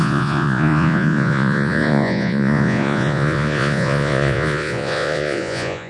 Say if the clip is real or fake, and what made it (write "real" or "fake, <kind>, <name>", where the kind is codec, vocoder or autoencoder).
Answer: fake, vocoder, Vocos